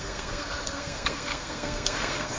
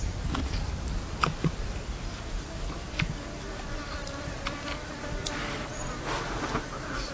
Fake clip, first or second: first